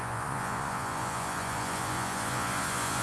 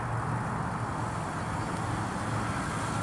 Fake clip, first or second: first